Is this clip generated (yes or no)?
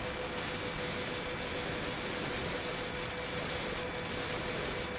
no